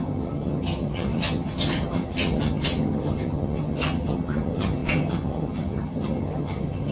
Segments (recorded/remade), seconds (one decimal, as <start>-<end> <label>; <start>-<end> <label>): 0.0-6.9 remade